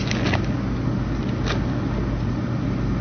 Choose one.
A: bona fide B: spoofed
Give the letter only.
A